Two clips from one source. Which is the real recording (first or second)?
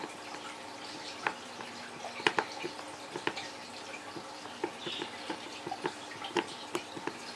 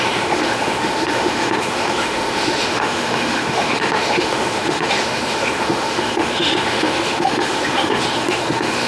first